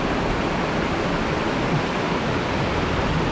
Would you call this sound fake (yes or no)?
no